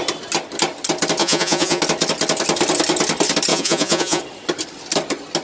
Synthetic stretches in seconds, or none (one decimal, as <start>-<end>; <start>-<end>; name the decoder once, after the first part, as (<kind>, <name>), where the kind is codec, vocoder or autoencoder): 1.2-1.8 (vocoder, Vocos); 3.5-4.2